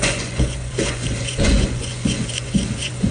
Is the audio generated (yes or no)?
yes